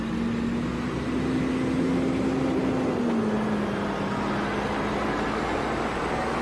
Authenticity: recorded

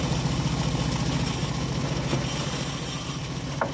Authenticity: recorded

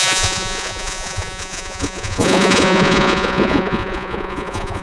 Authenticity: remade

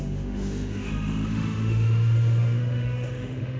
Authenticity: remade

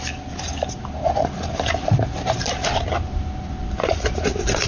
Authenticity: recorded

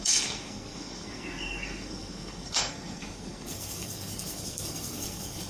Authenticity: remade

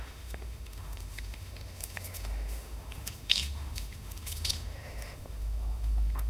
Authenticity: remade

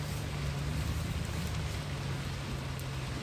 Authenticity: recorded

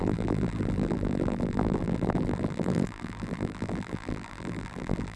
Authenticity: remade